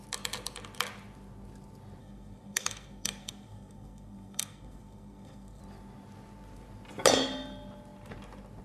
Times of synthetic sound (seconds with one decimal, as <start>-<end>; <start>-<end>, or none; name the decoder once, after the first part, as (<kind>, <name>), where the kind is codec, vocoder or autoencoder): 2.0-5.6 (codec, SNAC)